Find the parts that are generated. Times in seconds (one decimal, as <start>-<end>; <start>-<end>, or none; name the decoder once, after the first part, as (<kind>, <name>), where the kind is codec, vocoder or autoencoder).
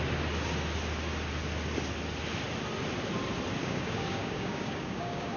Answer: 3.6-5.4 (codec, DAC)